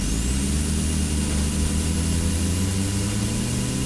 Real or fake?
real